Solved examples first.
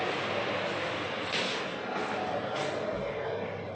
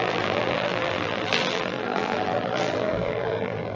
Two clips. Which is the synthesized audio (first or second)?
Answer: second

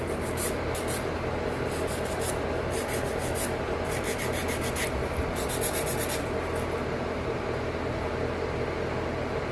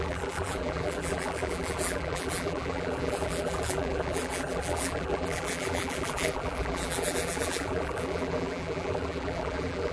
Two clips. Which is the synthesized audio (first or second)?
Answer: second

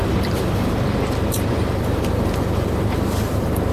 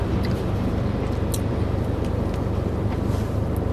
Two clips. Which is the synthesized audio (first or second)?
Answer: first